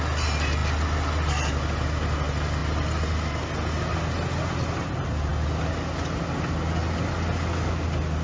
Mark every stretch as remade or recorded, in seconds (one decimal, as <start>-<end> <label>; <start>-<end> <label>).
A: 0.0-8.2 recorded